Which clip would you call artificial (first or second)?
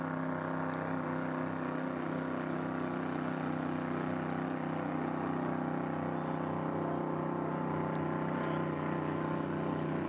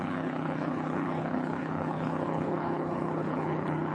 second